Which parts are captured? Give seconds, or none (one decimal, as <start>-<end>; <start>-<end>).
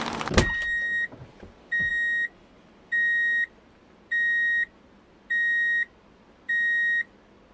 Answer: 0.0-7.5